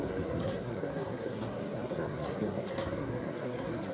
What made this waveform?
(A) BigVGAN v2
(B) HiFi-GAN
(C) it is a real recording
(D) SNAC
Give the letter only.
D